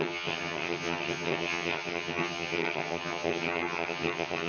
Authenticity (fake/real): fake